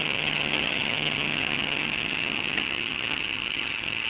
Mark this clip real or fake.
fake